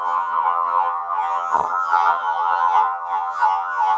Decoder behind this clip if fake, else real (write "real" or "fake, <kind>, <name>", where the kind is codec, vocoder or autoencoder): fake, vocoder, HiFi-GAN